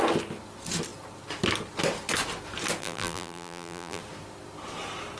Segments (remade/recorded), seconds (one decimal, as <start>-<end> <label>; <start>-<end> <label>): 0.0-2.8 recorded; 2.8-4.0 remade; 4.0-5.2 recorded